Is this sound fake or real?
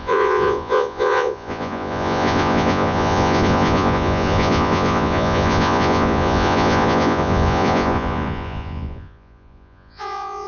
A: fake